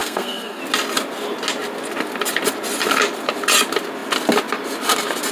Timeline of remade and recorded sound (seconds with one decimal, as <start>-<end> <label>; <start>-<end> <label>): 0.0-0.6 remade; 0.6-5.3 recorded